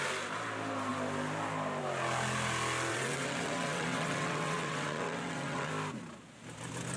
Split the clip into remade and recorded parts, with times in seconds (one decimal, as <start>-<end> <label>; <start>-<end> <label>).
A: 0.0-2.9 recorded; 2.9-5.7 remade; 5.7-7.0 recorded